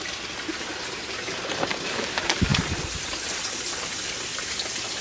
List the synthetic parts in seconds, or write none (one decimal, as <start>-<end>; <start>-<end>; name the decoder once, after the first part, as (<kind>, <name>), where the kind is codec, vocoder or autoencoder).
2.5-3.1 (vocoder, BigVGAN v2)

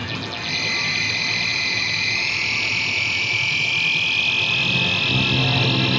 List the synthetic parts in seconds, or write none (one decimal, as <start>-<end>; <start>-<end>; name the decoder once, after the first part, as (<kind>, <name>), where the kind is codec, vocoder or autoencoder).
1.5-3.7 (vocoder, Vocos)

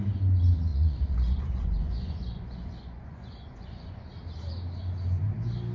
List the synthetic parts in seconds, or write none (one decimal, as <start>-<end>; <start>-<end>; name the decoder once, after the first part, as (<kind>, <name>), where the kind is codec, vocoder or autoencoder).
0.7-4.1 (vocoder, Vocos)